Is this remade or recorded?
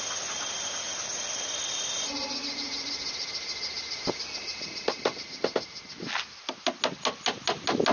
recorded